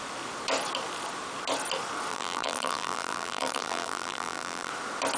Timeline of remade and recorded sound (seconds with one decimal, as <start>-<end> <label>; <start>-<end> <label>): 0.0-2.1 recorded; 2.1-4.7 remade; 4.7-5.2 recorded